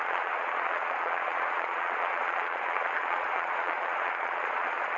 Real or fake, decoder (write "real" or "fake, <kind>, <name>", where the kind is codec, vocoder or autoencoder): fake, vocoder, Vocos